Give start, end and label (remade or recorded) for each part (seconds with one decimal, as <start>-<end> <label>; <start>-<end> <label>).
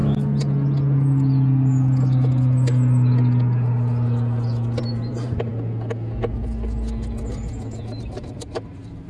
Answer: 0.0-4.8 recorded; 4.8-5.5 remade; 5.5-8.0 recorded; 8.0-9.1 remade